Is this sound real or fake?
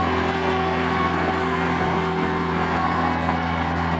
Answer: fake